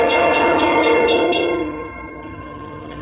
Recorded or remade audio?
remade